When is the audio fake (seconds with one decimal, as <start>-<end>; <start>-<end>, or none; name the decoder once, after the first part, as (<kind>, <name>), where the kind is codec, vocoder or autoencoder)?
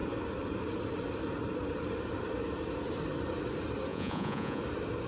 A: 3.9-4.6 (vocoder, Vocos)